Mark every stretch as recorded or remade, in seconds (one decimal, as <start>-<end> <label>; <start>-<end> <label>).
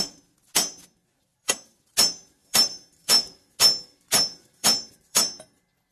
0.0-1.3 recorded; 1.3-1.8 remade; 1.8-2.4 recorded; 2.4-3.5 remade; 3.5-4.1 recorded; 4.1-5.2 remade; 5.2-5.9 recorded